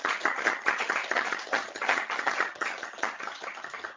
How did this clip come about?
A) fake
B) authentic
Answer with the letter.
A